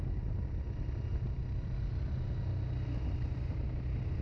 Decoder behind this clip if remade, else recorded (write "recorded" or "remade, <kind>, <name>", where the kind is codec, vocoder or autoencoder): recorded